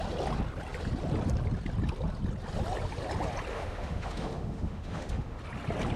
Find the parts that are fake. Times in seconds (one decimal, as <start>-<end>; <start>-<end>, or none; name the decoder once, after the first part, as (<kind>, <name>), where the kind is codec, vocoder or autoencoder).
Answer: 3.5-5.4 (autoencoder, DAC-VAE)